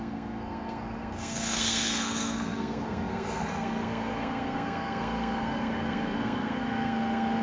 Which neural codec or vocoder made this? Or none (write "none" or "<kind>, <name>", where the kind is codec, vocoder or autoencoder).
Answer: codec, SNAC